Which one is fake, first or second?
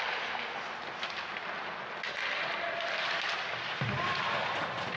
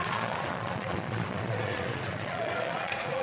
second